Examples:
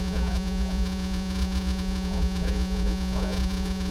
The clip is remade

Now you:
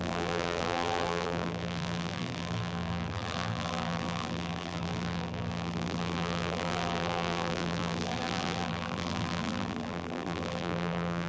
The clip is remade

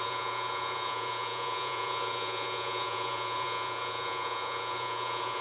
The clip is remade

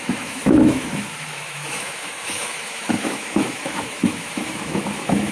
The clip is remade